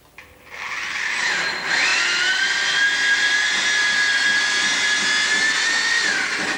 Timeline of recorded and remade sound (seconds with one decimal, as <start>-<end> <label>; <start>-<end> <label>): 0.0-6.6 recorded